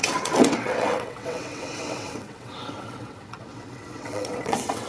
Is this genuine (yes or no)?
no